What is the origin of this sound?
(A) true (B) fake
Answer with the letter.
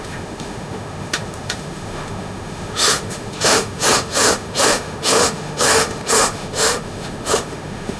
B